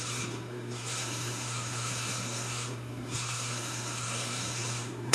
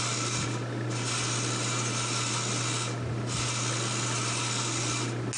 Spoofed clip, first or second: first